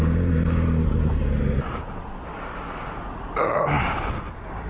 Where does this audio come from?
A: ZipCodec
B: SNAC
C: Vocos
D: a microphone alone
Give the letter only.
D